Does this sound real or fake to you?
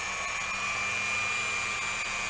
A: real